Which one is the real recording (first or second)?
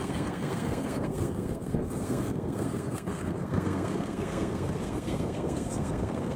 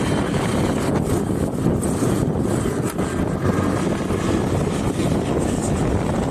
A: second